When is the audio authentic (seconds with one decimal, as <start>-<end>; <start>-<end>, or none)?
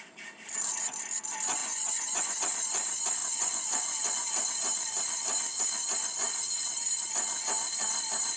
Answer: 0.0-1.6; 2.4-3.2; 4.5-8.4